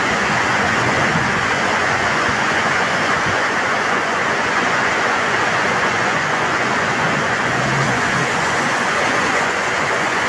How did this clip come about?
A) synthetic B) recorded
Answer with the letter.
A